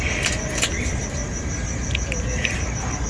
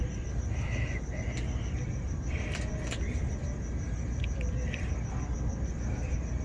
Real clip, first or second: second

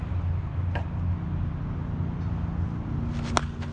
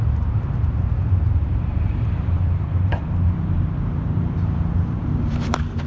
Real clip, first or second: first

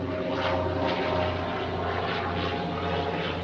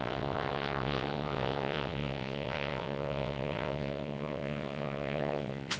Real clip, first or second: first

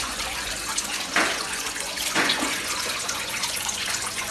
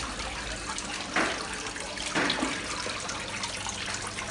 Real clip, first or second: second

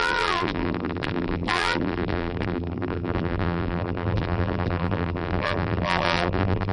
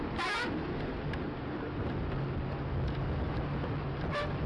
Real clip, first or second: second